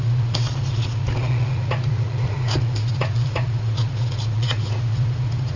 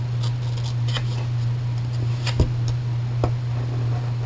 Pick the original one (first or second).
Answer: second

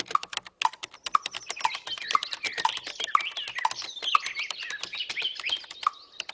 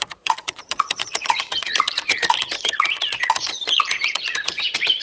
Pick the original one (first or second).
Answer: first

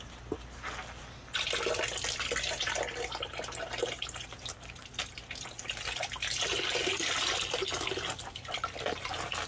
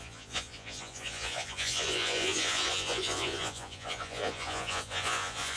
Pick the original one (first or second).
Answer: first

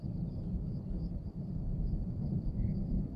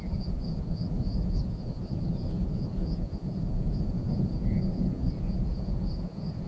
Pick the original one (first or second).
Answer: first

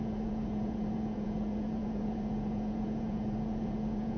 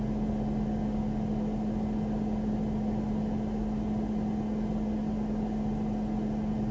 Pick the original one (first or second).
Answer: second